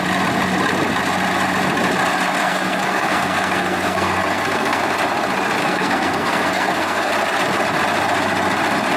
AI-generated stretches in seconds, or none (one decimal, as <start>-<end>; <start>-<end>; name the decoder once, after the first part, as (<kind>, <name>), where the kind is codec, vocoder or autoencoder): 2.4-4.8 (codec, SNAC); 5.6-7.1